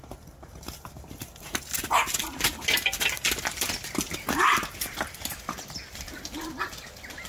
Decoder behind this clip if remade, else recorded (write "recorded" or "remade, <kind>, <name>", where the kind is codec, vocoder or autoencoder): recorded